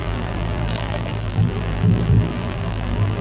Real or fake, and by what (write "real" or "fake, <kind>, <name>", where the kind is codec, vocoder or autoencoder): fake, vocoder, BigVGAN v2